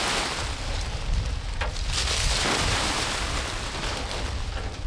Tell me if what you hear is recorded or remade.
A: recorded